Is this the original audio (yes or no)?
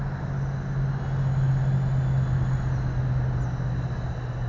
yes